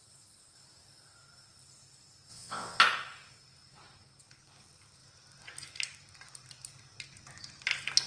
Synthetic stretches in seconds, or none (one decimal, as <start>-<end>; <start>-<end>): 2.3-2.8